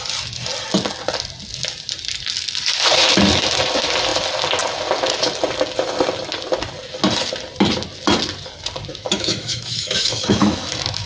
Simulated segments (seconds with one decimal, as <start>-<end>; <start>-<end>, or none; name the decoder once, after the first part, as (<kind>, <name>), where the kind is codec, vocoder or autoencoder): 8.9-11.1 (autoencoder, DAC-VAE)